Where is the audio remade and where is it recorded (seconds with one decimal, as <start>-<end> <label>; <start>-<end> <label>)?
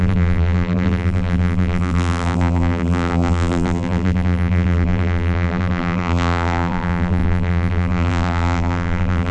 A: 0.0-9.3 remade